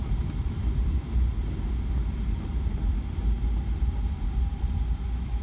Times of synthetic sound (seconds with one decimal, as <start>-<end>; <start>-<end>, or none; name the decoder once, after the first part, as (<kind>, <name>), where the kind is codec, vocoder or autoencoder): 0.0-1.3 (vocoder, BigVGAN v2); 4.5-5.4